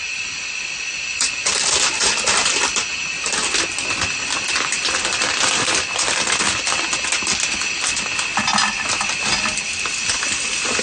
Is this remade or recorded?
recorded